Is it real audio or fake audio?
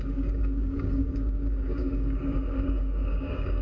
fake